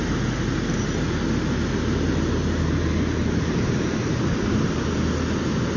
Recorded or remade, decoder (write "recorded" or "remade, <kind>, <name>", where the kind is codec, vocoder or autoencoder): recorded